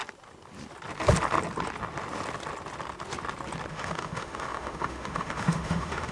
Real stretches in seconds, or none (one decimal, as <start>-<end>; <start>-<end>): 0.0-3.7